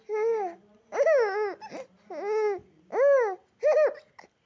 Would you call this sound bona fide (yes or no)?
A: yes